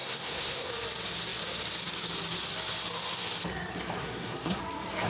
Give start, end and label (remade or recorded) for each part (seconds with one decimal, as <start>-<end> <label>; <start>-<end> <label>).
0.0-0.7 remade; 0.7-4.0 recorded; 4.0-4.6 remade; 4.6-5.1 recorded